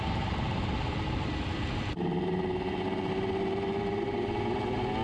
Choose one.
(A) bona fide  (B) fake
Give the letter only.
A